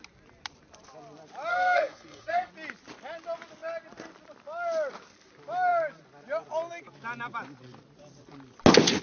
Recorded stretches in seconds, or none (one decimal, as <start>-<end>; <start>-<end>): 0.0-1.5; 2.5-9.0